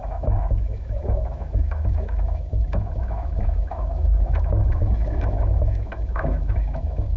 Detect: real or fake fake